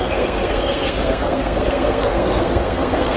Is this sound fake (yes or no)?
yes